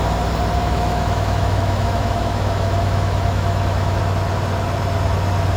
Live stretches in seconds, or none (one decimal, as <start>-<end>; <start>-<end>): 0.0-0.6; 4.0-5.6